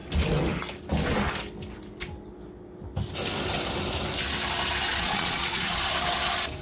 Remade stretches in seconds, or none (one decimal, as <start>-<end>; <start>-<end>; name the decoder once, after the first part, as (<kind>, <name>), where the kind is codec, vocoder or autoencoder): 4.9-5.8 (vocoder, Vocos)